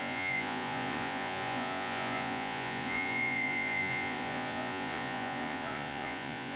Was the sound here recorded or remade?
remade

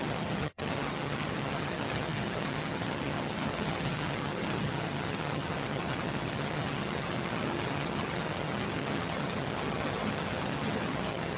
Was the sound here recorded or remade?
remade